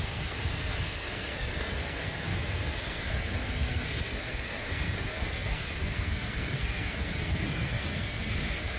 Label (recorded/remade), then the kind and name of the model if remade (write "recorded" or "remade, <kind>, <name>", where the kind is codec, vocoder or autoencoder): remade, codec, SNAC